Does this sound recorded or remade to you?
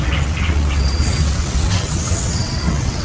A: remade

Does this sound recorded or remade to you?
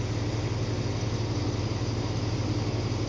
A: recorded